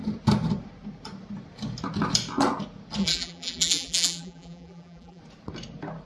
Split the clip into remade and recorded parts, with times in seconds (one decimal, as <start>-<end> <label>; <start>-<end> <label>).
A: 0.0-3.0 recorded; 3.0-5.2 remade; 5.2-6.1 recorded